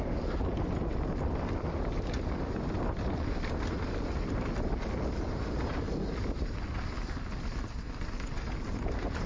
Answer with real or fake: real